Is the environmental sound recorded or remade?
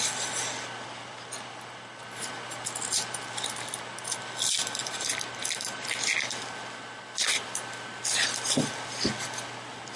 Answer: recorded